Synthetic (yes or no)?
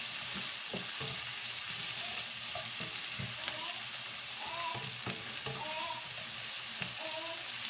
no